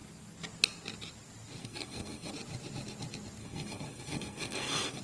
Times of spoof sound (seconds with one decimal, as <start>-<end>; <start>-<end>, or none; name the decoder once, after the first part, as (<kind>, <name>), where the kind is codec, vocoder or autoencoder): 1.6-2.3 (codec, SNAC); 3.4-5.0